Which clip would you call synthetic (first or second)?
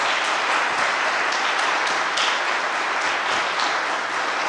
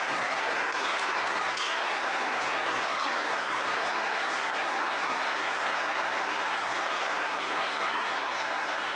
second